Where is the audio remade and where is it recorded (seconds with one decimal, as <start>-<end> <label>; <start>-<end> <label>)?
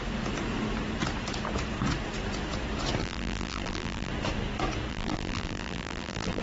0.0-3.0 recorded; 3.0-4.1 remade; 4.1-4.9 recorded; 4.9-6.4 remade